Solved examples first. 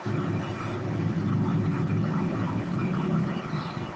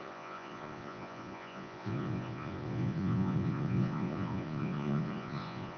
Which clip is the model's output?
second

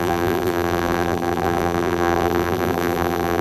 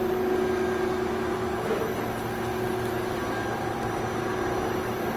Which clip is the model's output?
first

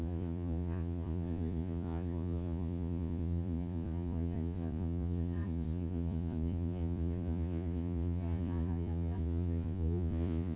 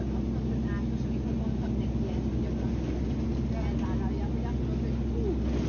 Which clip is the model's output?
first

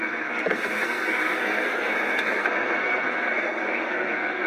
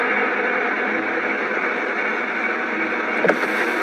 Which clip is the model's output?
first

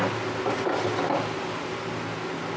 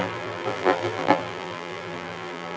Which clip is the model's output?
second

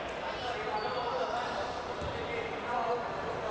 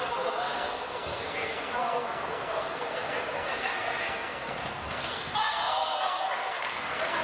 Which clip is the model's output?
second